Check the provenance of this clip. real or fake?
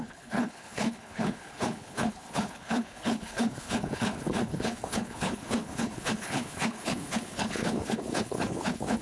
fake